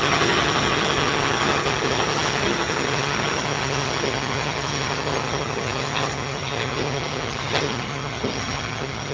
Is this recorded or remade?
remade